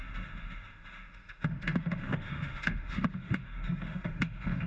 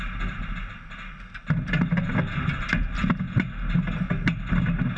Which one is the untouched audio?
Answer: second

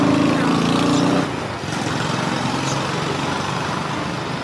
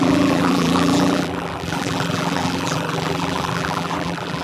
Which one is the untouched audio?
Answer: first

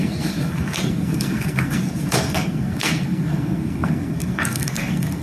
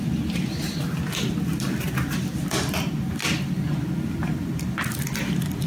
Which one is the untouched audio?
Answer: second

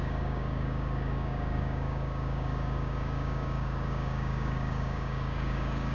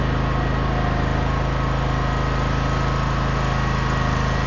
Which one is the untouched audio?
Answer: second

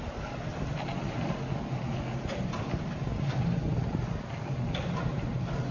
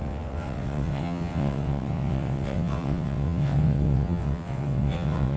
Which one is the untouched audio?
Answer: first